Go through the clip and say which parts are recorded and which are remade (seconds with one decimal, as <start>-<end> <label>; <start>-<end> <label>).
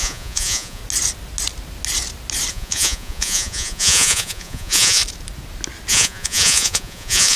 0.0-0.8 remade; 0.8-2.5 recorded; 2.5-5.0 remade; 5.0-5.9 recorded; 5.9-7.4 remade